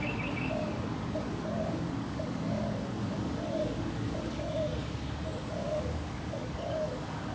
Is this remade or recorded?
remade